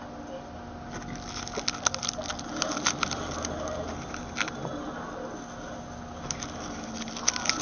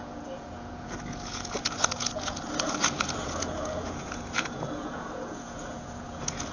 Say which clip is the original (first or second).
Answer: first